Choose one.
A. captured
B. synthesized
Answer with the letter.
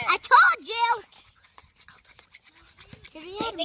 A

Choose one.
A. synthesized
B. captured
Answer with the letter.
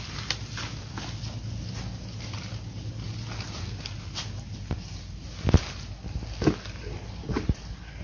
B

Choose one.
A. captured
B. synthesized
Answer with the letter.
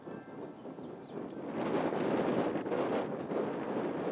A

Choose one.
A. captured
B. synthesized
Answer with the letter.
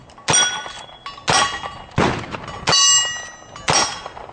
A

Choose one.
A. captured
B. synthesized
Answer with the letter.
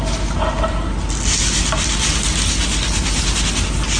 A